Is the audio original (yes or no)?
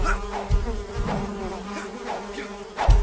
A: yes